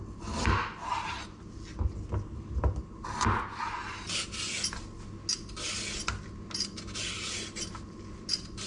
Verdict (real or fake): real